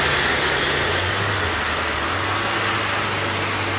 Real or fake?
real